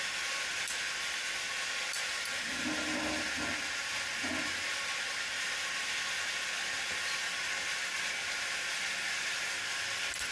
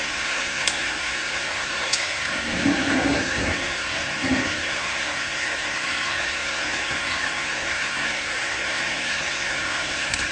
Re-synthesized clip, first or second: second